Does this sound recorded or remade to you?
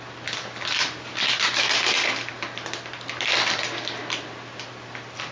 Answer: recorded